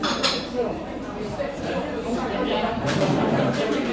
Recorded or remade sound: remade